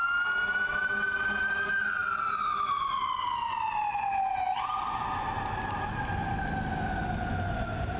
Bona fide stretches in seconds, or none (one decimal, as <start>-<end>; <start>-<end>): 0.0-8.0